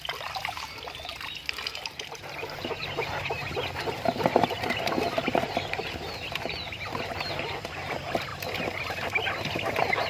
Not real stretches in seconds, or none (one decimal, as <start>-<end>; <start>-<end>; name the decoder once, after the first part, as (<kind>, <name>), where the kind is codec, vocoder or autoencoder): 1.1-3.5 (vocoder, BigVGAN v2)